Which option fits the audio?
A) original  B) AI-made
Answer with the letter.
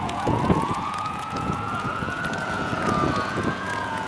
B